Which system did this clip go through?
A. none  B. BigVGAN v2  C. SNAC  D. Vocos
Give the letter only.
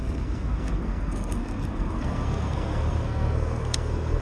C